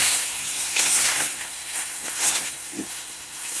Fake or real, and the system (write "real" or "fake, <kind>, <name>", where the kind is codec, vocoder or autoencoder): fake, codec, SNAC